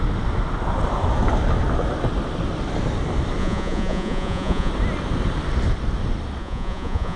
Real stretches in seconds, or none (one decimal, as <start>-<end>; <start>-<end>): 0.0-3.4; 4.7-6.4